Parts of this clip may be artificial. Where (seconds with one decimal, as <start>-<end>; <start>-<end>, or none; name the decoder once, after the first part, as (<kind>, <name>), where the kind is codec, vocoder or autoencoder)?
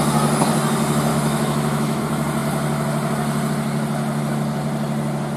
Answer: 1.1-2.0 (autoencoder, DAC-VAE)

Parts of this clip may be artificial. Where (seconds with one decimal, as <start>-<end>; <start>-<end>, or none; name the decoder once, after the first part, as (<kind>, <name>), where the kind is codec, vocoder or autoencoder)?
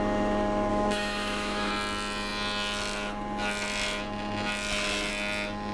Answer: 0.7-1.7 (autoencoder, DAC-VAE)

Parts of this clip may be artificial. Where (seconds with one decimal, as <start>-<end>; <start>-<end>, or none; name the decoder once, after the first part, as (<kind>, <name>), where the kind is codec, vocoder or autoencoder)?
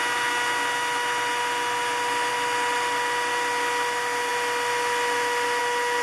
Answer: none